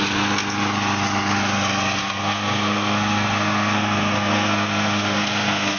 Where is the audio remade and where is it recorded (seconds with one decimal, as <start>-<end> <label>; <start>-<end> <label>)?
0.0-2.0 recorded; 2.0-5.8 remade